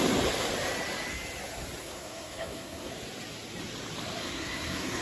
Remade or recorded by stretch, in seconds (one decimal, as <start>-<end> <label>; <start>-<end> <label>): 0.0-1.8 recorded; 1.8-2.9 remade; 2.9-4.2 recorded; 4.2-5.0 remade